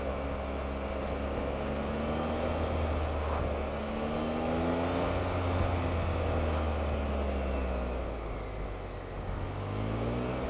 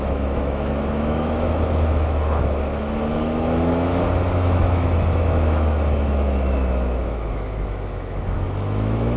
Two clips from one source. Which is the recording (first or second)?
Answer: first